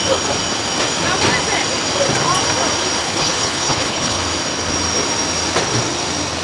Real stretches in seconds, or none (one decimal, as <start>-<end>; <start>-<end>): 0.0-3.0; 4.2-6.4